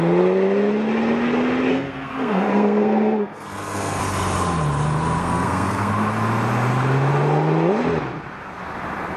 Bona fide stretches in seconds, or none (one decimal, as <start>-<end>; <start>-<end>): 0.0-1.7; 4.0-5.2; 5.9-9.2